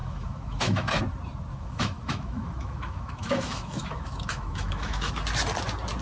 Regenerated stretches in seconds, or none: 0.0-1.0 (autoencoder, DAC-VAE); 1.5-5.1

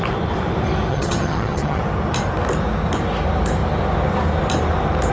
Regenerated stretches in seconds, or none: 0.9-1.8 (vocoder, HiFi-GAN)

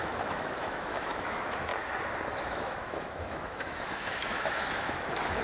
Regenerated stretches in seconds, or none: 0.0-1.7 (autoencoder, DAC-VAE); 2.4-5.4